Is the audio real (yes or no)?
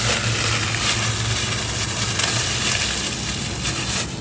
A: yes